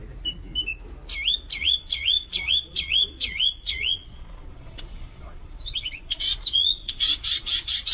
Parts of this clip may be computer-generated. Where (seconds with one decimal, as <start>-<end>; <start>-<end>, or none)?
1.6-7.9